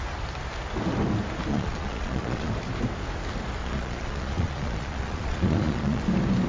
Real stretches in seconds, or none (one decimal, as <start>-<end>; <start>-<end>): 0.0-1.5; 2.5-3.6; 6.0-6.5